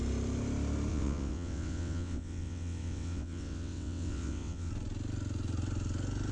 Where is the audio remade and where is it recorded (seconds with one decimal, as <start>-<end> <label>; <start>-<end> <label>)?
0.0-0.9 recorded; 0.9-4.7 remade; 4.7-6.3 recorded